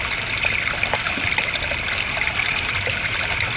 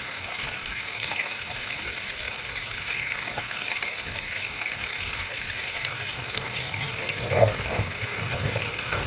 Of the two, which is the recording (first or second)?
first